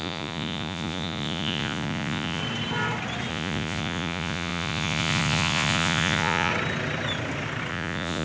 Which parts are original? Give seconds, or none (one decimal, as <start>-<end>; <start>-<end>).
2.4-3.3; 6.5-7.7